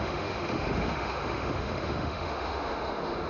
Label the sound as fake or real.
fake